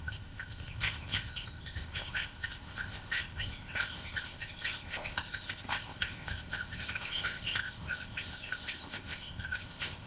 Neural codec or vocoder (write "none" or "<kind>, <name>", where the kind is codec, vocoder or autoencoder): codec, ZipCodec